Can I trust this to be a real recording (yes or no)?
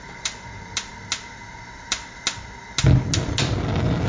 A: yes